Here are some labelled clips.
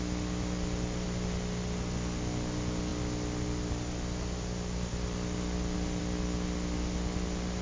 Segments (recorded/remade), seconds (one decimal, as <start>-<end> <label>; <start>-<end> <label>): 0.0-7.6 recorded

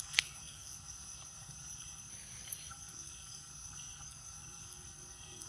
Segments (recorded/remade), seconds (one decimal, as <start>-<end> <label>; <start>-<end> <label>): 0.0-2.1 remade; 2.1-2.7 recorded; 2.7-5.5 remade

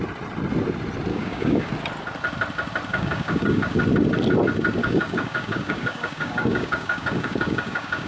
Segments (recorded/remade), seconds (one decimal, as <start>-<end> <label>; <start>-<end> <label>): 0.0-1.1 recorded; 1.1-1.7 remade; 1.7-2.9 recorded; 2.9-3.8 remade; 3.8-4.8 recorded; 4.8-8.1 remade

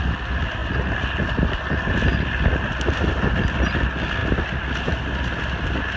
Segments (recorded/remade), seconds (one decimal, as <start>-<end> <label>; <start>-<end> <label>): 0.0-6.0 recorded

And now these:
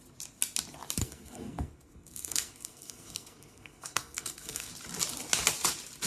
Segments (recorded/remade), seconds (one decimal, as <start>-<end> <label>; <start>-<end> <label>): 0.0-1.0 recorded; 1.0-4.7 remade; 4.7-6.1 recorded

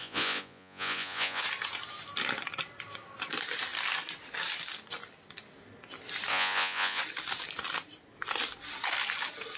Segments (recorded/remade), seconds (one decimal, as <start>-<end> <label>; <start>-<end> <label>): 0.0-1.4 remade; 1.4-6.3 recorded; 6.3-7.0 remade; 7.0-9.6 recorded

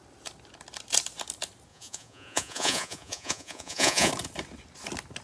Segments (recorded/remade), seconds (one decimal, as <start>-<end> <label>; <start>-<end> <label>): 0.0-1.7 recorded; 1.7-4.1 remade; 4.1-5.2 recorded